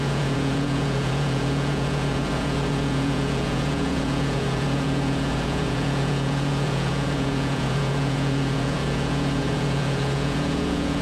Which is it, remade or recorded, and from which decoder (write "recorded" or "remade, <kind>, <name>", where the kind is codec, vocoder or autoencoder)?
remade, vocoder, Vocos